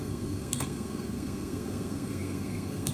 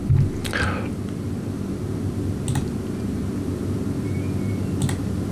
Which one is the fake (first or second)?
first